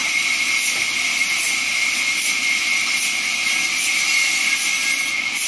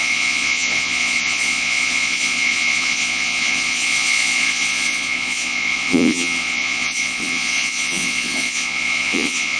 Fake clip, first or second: second